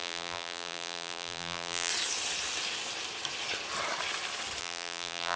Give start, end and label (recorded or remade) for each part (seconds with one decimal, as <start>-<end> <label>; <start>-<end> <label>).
0.0-1.9 remade; 1.9-4.6 recorded; 4.6-5.4 remade